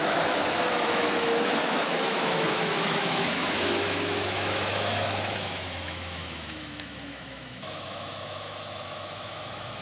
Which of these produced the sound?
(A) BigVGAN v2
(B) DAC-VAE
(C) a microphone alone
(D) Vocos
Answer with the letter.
B